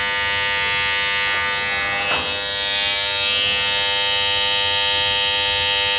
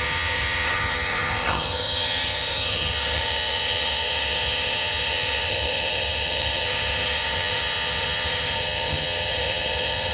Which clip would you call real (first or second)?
first